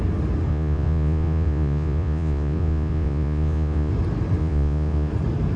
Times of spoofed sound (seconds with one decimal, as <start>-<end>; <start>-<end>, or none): 0.5-3.9; 4.4-5.1